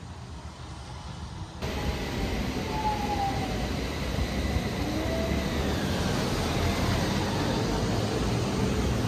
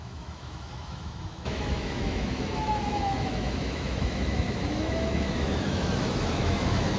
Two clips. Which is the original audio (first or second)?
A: first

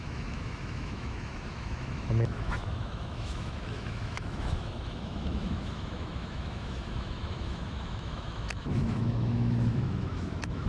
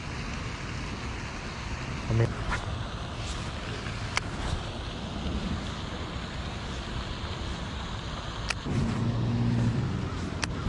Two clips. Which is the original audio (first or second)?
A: second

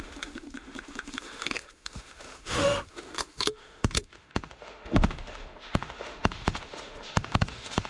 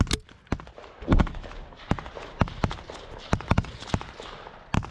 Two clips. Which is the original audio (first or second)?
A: second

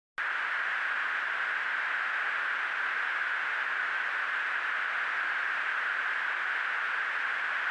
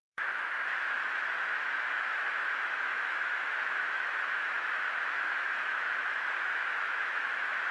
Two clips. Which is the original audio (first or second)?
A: first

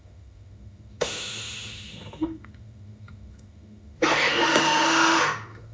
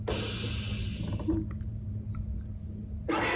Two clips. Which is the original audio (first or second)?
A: second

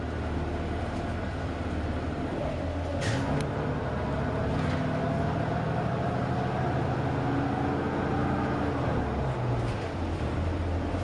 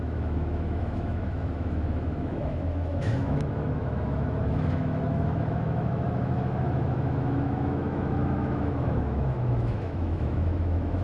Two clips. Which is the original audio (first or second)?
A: first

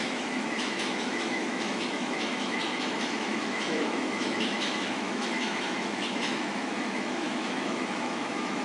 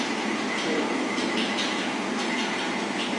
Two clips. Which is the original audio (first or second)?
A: second